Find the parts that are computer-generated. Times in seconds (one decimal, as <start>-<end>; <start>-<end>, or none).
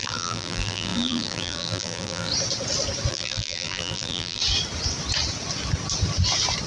0.0-2.3; 3.1-4.4